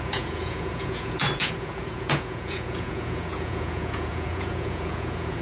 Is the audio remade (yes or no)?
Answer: yes